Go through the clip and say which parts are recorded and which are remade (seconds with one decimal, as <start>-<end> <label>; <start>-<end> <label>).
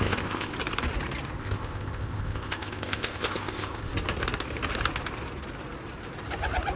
0.0-0.5 remade; 0.5-1.4 recorded; 1.4-3.9 remade; 3.9-6.8 recorded